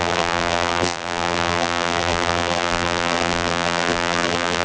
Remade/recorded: remade